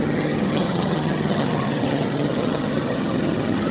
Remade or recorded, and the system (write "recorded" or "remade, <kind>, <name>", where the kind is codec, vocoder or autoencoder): remade, vocoder, HiFi-GAN